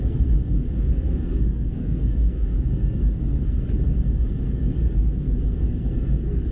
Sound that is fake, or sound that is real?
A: fake